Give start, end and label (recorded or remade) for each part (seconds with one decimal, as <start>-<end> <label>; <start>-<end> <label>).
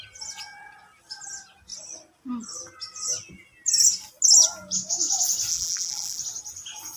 0.0-5.5 recorded; 5.5-6.2 remade; 6.2-7.0 recorded